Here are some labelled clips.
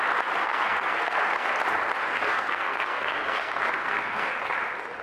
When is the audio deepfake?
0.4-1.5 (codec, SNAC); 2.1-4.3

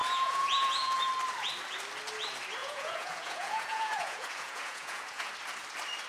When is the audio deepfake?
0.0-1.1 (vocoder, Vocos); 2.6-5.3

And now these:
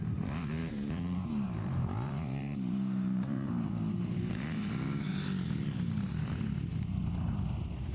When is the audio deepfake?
0.6-4.3 (vocoder, BigVGAN v2)

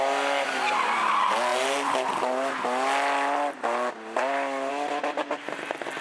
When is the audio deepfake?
none

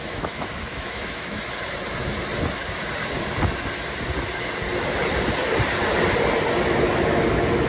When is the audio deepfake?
0.0-1.6 (autoencoder, DAC-VAE)

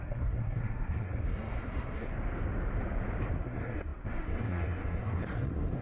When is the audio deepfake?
0.0-2.1 (codec, SNAC); 3.4-5.8

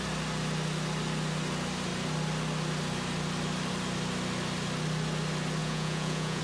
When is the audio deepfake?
5.6-6.4 (vocoder, Vocos)

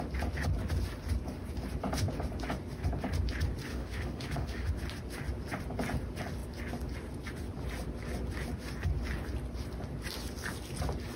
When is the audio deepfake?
3.7-4.7 (autoencoder, DAC-VAE)